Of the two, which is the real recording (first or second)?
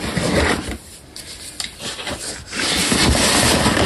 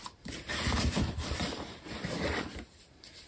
first